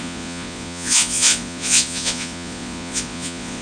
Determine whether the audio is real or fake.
fake